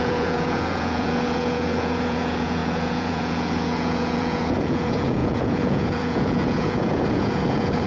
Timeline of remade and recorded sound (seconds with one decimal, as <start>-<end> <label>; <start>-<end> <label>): 0.0-7.9 remade